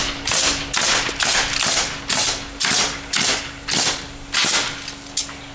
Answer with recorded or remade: recorded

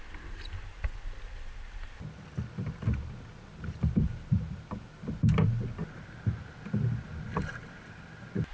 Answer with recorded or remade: recorded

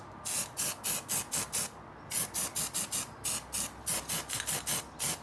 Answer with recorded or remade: recorded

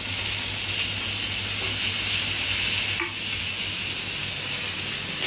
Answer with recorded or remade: recorded